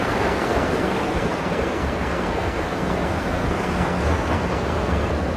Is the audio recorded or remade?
remade